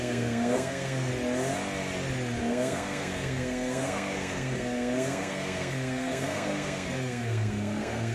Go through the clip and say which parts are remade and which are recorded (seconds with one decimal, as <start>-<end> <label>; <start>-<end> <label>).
0.0-1.1 remade; 1.1-2.4 recorded; 2.4-8.1 remade